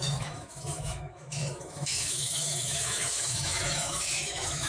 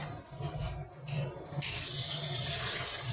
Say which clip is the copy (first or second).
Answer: first